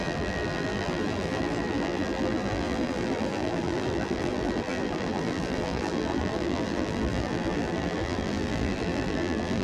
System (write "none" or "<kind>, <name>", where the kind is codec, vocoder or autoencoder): vocoder, BigVGAN v2